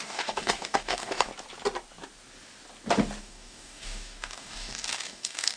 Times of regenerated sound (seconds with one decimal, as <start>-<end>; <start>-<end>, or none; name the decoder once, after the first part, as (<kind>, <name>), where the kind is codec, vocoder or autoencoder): 0.0-1.3 (codec, DAC); 3.2-5.6